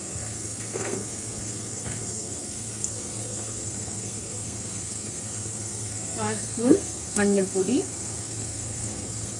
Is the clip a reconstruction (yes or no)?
yes